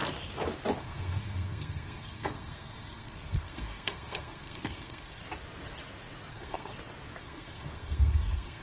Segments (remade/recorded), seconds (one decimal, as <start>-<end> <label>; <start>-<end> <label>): 0.0-0.8 recorded; 0.8-5.2 remade; 5.2-6.3 recorded; 6.3-6.7 remade; 6.7-7.2 recorded; 7.2-8.6 remade